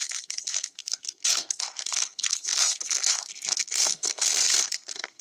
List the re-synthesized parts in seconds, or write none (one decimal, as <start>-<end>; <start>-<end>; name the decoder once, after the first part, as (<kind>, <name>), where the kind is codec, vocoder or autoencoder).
0.0-5.2 (codec, SNAC)